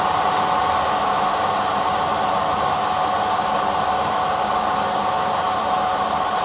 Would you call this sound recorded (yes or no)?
yes